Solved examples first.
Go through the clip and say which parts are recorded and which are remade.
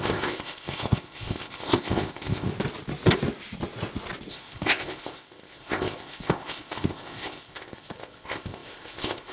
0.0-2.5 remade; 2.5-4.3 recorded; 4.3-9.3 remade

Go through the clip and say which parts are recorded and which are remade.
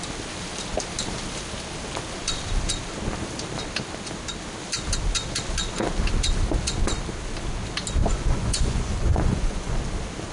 0.0-8.0 recorded; 8.0-9.8 remade; 9.8-10.3 recorded